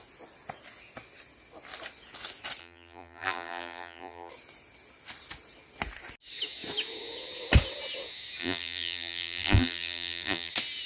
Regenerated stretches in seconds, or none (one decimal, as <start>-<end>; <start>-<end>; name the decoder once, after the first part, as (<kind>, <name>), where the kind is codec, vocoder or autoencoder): 2.6-4.3 (vocoder, BigVGAN v2); 8.4-10.5